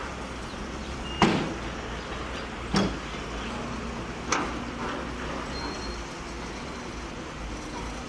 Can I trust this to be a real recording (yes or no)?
yes